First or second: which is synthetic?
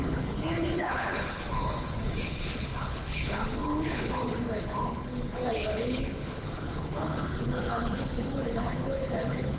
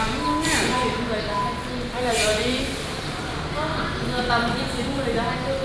first